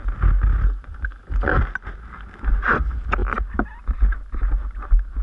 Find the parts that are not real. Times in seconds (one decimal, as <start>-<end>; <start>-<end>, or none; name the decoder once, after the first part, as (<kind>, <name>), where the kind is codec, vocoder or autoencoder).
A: none